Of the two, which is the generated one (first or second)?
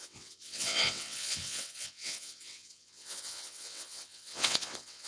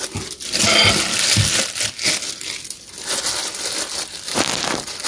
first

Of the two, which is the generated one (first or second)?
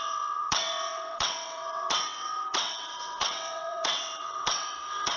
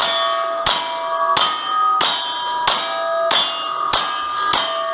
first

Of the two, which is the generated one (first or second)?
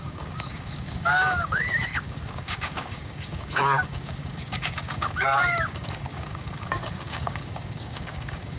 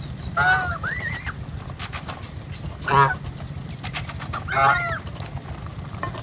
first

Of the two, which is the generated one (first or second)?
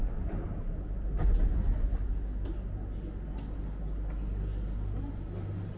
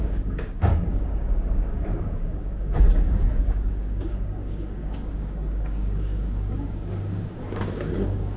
second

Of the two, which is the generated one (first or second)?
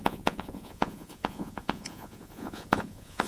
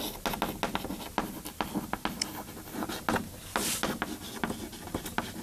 first